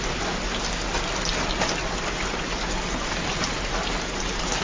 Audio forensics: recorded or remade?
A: recorded